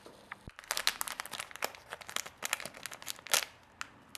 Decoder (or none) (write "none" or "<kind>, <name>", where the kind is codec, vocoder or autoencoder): none